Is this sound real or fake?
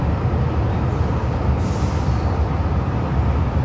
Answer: real